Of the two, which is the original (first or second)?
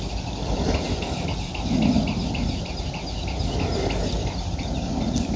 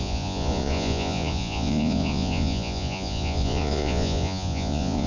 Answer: first